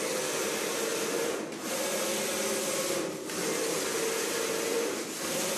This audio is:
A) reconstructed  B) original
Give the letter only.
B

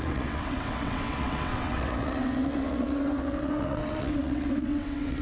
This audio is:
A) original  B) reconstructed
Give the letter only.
B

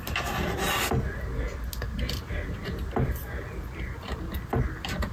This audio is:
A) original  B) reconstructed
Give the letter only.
A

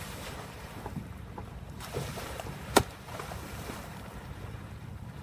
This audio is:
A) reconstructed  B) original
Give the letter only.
A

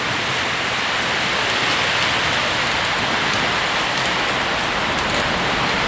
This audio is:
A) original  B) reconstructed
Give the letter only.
A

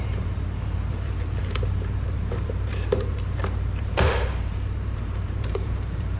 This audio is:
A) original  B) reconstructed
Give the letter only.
B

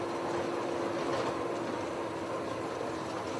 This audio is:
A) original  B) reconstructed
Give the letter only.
A